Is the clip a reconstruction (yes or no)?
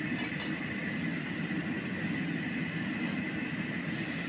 no